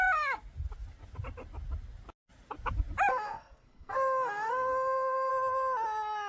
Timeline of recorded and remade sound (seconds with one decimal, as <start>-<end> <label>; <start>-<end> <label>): 0.0-3.1 recorded; 3.1-5.3 remade; 5.3-6.3 recorded